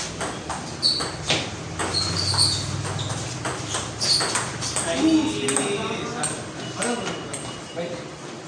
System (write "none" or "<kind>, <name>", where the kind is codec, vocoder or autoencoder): none